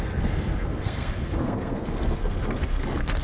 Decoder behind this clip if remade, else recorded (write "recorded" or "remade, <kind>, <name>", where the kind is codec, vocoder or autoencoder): remade, codec, SNAC